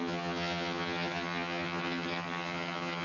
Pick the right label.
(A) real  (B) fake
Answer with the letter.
B